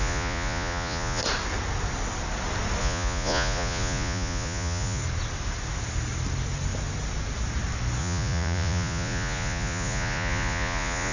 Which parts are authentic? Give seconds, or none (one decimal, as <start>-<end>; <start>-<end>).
1.2-2.8; 5.0-8.0